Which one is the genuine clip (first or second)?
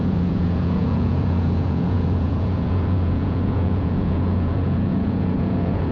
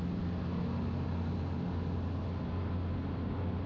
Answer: second